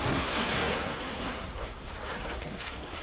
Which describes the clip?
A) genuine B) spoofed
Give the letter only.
B